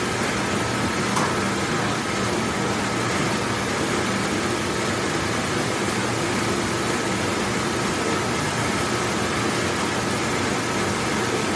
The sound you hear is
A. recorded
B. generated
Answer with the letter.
A